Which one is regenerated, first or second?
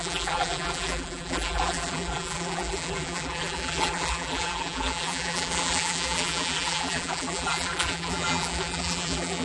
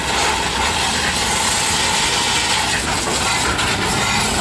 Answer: first